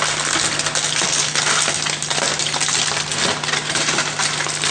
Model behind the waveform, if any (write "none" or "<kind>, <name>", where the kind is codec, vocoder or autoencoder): none